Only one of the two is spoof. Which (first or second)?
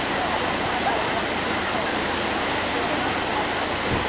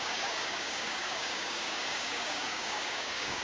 second